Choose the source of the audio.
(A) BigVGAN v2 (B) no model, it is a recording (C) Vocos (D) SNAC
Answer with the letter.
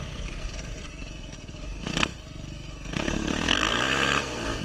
D